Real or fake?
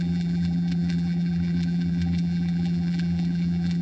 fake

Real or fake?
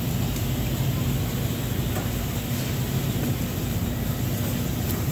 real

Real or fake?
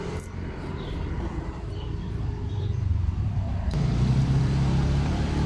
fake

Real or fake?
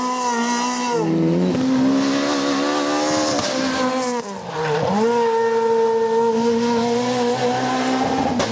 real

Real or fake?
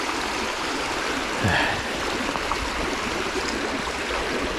fake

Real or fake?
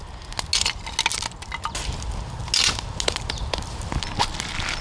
real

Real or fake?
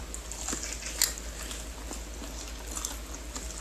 real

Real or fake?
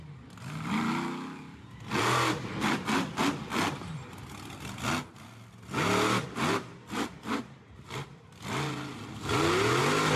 real